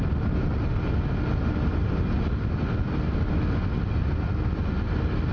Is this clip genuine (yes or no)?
yes